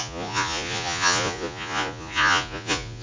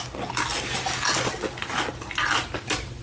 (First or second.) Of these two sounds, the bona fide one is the second